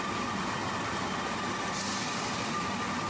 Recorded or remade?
recorded